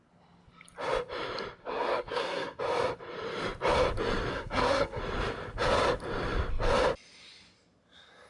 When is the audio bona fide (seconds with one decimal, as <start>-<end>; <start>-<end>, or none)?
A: 0.0-1.6; 2.6-4.3; 5.0-8.3